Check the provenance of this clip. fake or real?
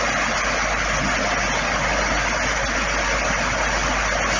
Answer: real